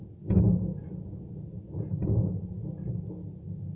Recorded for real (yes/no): yes